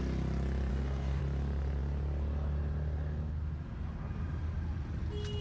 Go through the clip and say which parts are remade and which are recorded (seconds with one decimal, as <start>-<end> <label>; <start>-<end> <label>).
0.0-0.7 recorded; 0.7-1.2 remade; 1.2-5.4 recorded